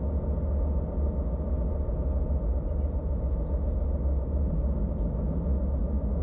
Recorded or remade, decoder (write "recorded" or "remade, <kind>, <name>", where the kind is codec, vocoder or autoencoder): recorded